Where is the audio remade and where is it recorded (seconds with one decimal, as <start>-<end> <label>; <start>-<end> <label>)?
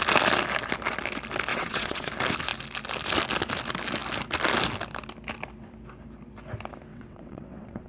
0.0-1.5 recorded; 1.5-2.1 remade; 2.1-6.9 recorded; 6.9-7.9 remade